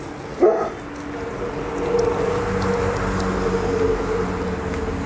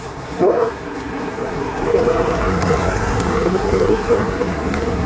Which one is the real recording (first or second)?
first